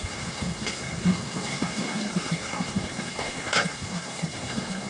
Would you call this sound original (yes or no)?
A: no